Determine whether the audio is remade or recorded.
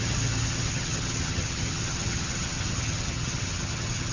remade